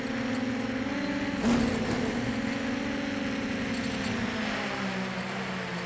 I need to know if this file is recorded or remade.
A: recorded